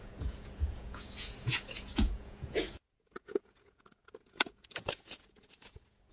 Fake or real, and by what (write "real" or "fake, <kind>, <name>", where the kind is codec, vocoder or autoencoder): fake, vocoder, Vocos